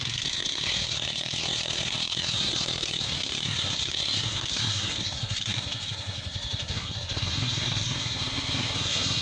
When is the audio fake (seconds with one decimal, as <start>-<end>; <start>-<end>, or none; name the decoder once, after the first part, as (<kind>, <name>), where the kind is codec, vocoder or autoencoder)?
0.0-9.2 (codec, SNAC)